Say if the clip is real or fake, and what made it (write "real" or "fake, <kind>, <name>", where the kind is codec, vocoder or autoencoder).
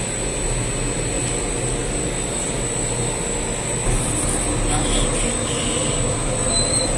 real